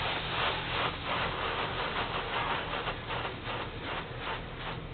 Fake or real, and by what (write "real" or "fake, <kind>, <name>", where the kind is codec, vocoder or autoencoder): real